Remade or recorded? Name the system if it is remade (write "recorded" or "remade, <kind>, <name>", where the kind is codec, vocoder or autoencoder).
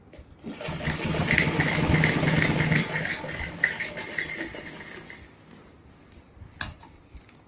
recorded